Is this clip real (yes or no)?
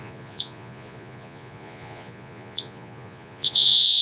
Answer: no